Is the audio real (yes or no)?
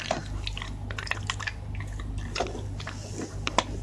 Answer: yes